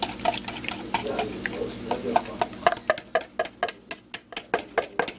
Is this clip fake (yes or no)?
no